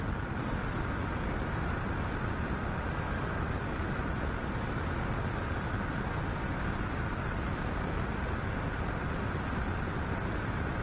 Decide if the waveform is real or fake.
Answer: real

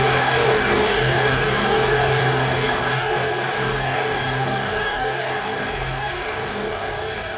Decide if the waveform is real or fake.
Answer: fake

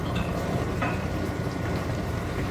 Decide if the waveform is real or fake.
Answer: fake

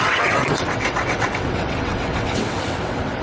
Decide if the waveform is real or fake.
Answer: fake